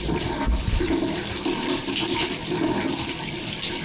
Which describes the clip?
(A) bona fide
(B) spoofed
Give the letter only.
A